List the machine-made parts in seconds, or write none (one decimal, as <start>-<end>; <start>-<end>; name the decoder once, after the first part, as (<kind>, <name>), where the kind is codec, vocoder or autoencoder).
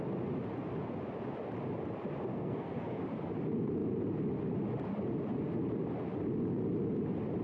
2.3-3.0 (codec, SNAC)